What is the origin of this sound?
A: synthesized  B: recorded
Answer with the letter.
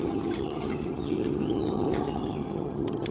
A